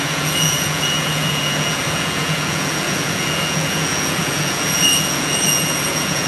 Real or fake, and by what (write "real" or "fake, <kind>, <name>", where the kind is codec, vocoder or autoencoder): fake, vocoder, Vocos